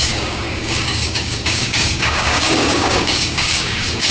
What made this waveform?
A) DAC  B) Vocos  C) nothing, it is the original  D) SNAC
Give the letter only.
A